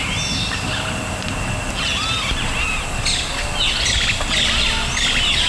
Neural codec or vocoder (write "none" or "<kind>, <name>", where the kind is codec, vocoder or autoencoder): none